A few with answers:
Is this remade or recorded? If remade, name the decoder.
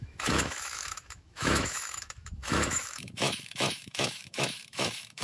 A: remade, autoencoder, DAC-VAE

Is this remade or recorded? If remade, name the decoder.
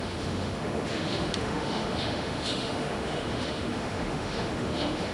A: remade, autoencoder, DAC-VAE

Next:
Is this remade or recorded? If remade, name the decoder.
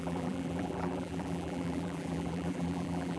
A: remade, vocoder, BigVGAN v2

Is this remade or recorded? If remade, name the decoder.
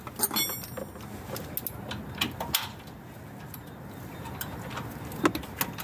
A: recorded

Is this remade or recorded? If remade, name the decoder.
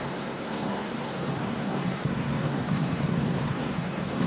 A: remade, codec, SNAC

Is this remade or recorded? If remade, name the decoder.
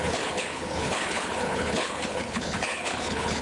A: remade, codec, HILCodec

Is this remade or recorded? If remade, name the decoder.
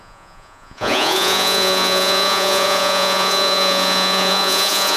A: remade, vocoder, Vocos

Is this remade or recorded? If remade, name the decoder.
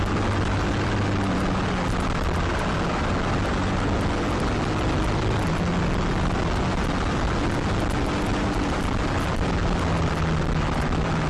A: recorded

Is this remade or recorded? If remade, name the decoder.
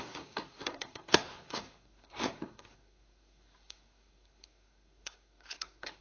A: remade, codec, SNAC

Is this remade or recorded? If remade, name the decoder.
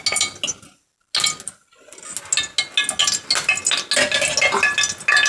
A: recorded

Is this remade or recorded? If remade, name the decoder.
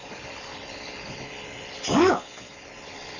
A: recorded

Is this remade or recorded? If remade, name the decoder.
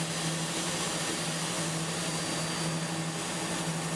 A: recorded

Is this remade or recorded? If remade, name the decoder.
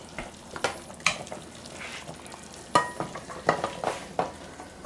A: recorded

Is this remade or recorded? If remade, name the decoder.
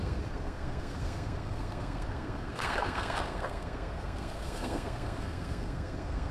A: remade, codec, SNAC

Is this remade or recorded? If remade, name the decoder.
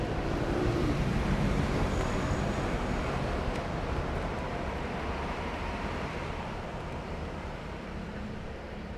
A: remade, vocoder, BigVGAN v2